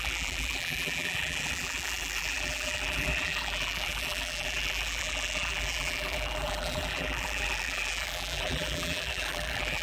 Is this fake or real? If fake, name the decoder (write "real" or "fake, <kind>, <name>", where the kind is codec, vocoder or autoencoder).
fake, vocoder, BigVGAN v2